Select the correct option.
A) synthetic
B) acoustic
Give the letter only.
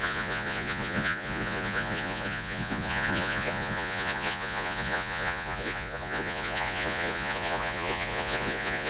A